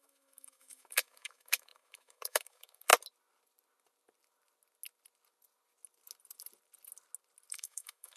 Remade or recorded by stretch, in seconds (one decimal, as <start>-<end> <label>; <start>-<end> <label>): 0.0-2.9 remade; 2.9-7.5 recorded; 7.5-8.2 remade